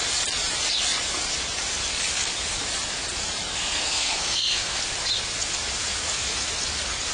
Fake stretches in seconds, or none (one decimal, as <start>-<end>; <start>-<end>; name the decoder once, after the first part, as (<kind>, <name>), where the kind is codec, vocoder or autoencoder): 3.5-4.8 (codec, SNAC)